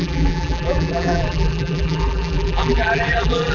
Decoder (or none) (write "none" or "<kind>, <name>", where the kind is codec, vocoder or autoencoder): vocoder, BigVGAN v2